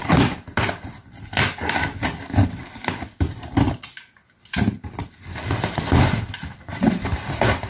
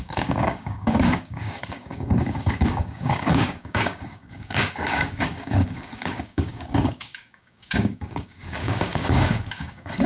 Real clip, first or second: first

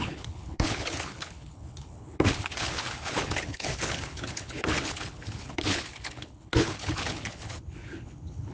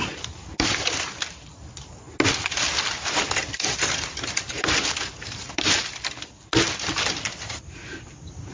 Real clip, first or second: second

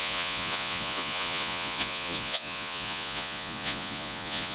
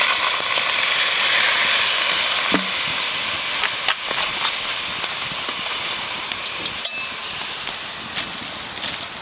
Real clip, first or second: second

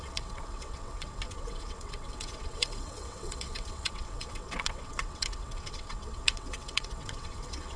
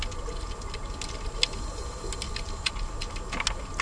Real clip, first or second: second